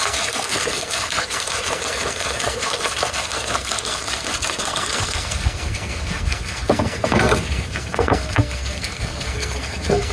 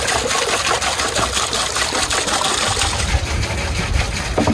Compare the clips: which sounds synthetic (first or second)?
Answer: first